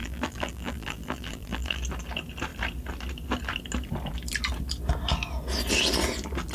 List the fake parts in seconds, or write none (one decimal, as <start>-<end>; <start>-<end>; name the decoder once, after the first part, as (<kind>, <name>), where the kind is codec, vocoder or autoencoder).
0.0-1.8 (vocoder, BigVGAN v2)